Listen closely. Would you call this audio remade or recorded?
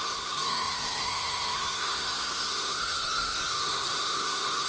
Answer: remade